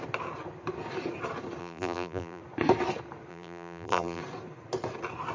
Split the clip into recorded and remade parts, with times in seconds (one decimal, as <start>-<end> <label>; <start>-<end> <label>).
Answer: 0.0-1.6 recorded; 1.6-2.4 remade; 2.4-3.3 recorded; 3.3-4.2 remade; 4.2-5.3 recorded